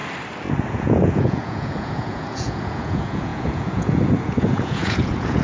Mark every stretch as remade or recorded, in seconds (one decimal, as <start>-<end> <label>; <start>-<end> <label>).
0.0-0.7 recorded; 0.7-5.4 remade

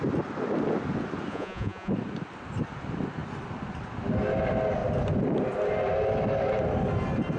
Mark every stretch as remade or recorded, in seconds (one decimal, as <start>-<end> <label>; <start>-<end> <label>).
0.0-1.3 recorded; 1.3-1.9 remade; 1.9-7.4 recorded

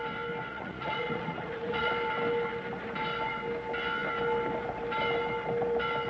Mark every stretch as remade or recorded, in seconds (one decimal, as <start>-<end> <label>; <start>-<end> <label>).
0.0-0.5 recorded; 0.5-1.9 remade; 1.9-6.1 recorded

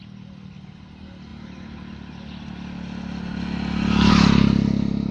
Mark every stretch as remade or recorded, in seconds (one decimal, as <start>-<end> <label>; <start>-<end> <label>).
0.0-5.1 recorded

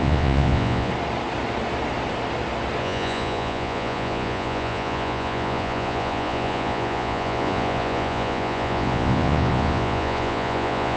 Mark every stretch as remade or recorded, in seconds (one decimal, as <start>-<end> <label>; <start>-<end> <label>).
0.0-0.9 remade; 0.9-2.8 recorded; 2.8-11.0 remade